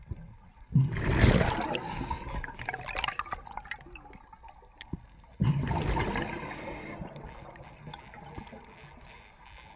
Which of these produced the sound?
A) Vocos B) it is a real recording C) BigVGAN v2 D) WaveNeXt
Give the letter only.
B